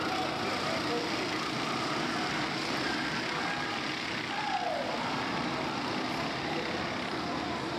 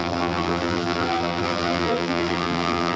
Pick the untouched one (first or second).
first